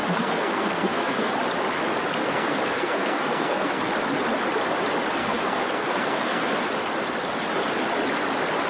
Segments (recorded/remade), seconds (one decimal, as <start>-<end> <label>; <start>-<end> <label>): 0.0-1.3 remade; 1.3-2.2 recorded; 2.2-3.9 remade; 3.9-5.2 recorded; 5.2-6.6 remade; 6.6-8.7 recorded